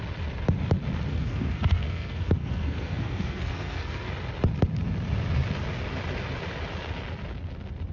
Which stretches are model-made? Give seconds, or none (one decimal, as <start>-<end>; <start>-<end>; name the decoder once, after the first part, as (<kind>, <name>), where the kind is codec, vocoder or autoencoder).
1.1-4.1 (codec, SNAC)